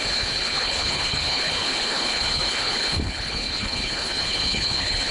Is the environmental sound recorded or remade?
remade